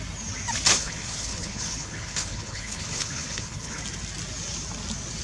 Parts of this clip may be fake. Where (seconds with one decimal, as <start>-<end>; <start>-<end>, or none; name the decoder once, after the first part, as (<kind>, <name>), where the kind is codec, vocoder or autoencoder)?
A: 0.7-3.8 (codec, HILCodec)